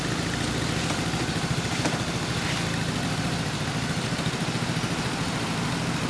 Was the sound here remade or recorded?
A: recorded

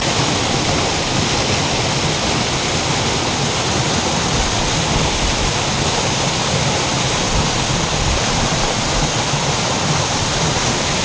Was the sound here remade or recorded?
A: recorded